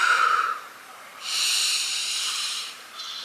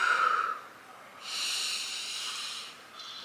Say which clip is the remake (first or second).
first